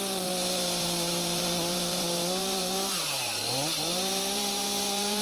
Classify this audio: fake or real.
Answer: fake